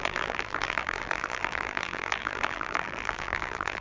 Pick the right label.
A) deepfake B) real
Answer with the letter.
A